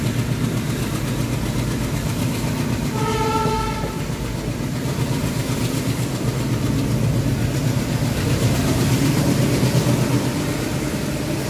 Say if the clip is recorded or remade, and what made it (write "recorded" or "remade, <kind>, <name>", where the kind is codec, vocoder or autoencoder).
recorded